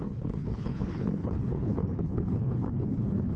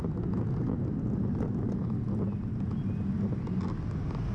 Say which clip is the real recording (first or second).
second